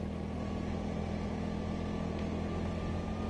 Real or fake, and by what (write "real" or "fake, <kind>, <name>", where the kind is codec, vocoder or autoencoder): real